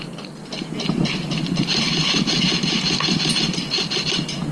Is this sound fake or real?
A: real